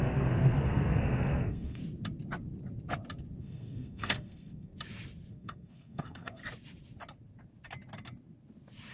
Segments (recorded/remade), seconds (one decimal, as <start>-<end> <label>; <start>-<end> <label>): 0.0-1.8 remade; 1.8-3.4 recorded; 3.4-4.7 remade; 4.7-5.3 recorded; 5.3-6.4 remade; 6.4-8.9 recorded